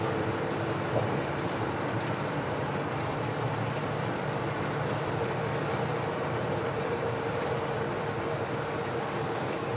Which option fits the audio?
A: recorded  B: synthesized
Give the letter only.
B